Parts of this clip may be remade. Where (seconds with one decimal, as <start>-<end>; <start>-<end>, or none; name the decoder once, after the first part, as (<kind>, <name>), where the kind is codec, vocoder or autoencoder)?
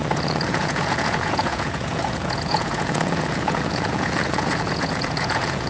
0.0-5.7 (vocoder, Vocos)